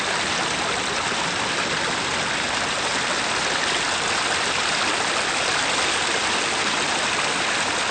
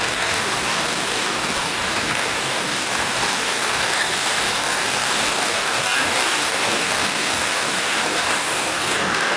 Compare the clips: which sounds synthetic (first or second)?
second